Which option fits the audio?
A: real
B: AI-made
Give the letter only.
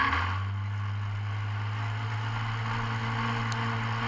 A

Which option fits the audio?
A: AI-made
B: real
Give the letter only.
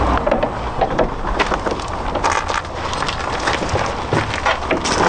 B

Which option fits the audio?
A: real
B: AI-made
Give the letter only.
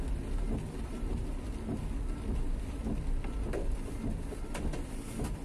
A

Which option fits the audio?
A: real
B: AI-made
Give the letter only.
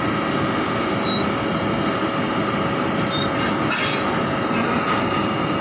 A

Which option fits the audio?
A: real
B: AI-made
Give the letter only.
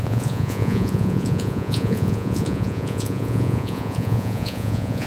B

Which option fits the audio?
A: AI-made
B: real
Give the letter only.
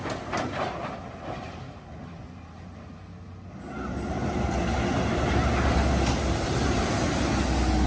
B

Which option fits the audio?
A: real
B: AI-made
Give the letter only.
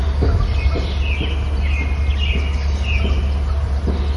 A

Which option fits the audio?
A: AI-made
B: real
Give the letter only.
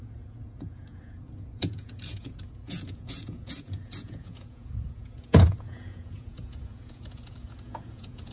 A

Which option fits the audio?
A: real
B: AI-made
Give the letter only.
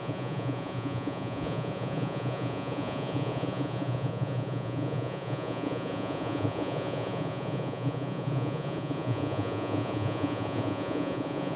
B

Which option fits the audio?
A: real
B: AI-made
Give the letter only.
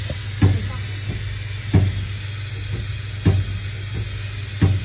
A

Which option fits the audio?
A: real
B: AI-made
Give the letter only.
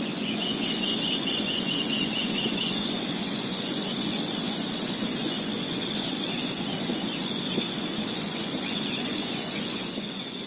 B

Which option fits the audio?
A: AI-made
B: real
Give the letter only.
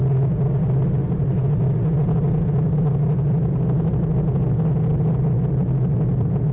B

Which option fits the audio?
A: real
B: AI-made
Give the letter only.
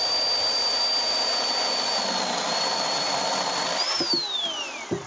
A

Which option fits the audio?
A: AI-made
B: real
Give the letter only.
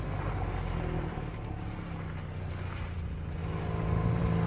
B